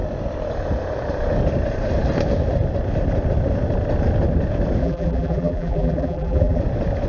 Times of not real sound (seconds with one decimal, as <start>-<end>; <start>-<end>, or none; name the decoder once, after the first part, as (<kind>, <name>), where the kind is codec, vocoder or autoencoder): 4.8-6.6 (vocoder, BigVGAN v2)